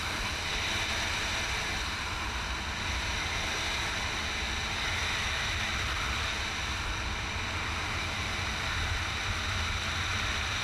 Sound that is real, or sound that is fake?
real